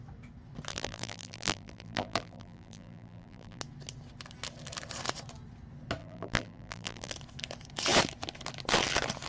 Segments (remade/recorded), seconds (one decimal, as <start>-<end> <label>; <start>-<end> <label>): 0.0-0.7 recorded; 0.7-3.6 remade; 3.6-6.0 recorded; 6.0-7.1 remade; 7.1-9.3 recorded